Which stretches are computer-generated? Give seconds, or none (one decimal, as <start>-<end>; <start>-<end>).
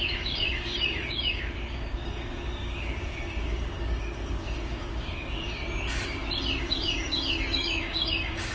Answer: 0.0-5.6; 6.6-8.5